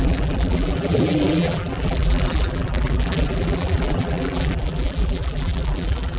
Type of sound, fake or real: fake